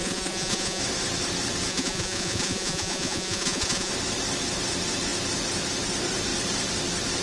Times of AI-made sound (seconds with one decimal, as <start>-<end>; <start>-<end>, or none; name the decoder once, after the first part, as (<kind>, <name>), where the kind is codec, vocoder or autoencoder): 0.0-0.8 (vocoder, Vocos); 1.7-3.9